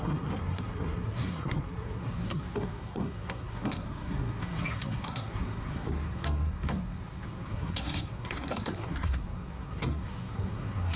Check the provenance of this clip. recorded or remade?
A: remade